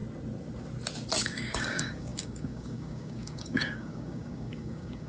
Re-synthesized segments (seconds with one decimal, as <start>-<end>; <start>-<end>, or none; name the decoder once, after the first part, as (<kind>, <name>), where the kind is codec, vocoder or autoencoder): 1.2-5.1 (codec, DAC)